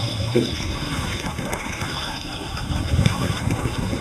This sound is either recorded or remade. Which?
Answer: remade